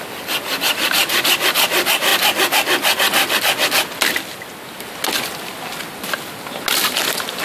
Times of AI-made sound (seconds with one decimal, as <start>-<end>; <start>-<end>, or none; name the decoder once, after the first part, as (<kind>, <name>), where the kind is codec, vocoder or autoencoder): none